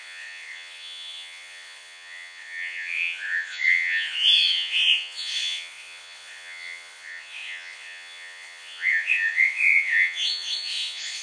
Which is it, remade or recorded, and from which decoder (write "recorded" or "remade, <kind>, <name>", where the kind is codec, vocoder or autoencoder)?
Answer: remade, vocoder, Vocos